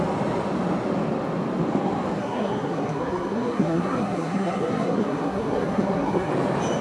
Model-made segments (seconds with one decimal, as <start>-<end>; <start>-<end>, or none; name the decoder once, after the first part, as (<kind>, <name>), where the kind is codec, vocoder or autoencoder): 2.2-6.3 (codec, SNAC)